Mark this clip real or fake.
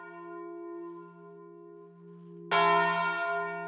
real